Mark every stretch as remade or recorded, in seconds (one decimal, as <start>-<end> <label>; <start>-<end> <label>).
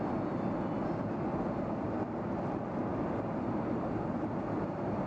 0.0-5.1 recorded